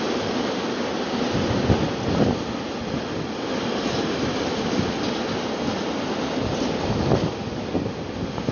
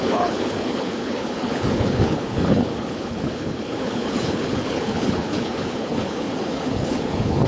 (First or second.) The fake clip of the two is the second